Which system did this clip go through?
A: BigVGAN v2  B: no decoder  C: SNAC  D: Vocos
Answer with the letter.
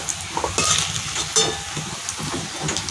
B